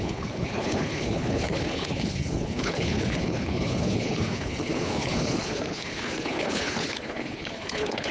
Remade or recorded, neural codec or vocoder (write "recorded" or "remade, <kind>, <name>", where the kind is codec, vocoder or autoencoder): remade, codec, HILCodec